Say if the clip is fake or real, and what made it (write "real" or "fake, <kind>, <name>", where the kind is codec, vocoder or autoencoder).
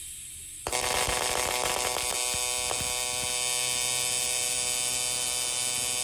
real